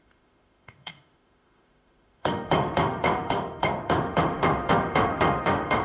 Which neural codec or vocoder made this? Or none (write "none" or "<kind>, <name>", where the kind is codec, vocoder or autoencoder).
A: autoencoder, DAC-VAE